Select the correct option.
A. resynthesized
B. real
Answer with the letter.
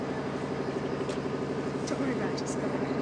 B